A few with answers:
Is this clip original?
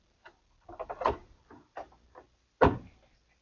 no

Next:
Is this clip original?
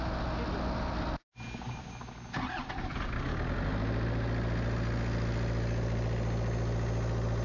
yes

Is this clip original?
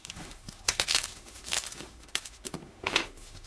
no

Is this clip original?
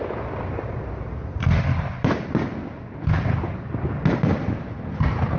yes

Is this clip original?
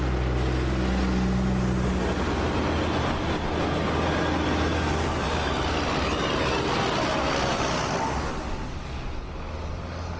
yes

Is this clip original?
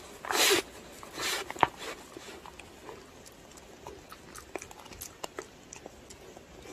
yes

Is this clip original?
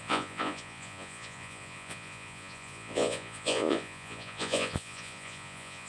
no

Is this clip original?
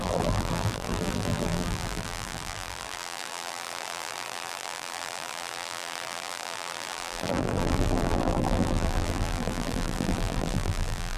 no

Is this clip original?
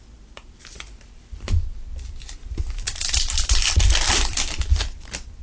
no